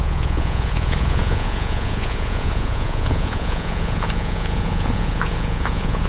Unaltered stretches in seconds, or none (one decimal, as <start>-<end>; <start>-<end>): none